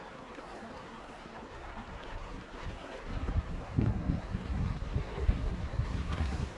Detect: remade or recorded remade